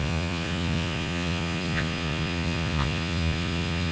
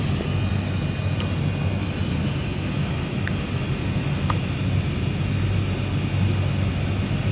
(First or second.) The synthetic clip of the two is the first